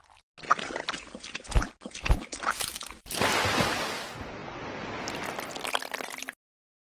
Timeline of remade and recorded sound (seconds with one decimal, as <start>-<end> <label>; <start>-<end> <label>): 0.0-7.0 recorded